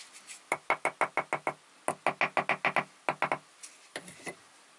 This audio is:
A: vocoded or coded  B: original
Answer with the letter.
B